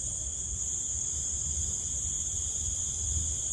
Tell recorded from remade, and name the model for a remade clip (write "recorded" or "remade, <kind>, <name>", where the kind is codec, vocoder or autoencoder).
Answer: recorded